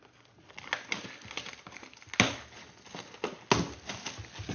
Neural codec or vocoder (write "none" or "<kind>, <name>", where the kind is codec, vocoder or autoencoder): none